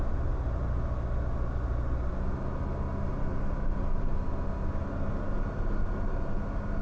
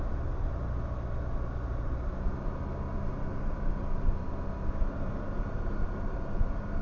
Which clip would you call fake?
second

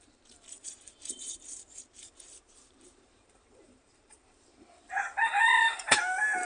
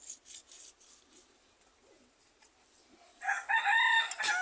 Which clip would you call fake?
first